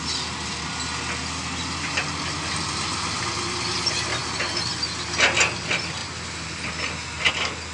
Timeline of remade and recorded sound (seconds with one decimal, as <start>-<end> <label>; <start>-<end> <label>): 0.0-7.7 recorded